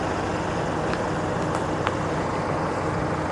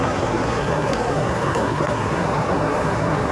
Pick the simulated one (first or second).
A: second